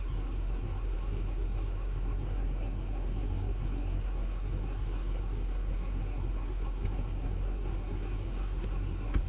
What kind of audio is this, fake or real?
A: fake